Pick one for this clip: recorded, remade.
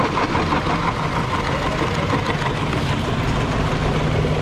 recorded